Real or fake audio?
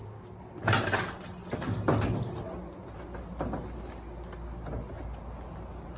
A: real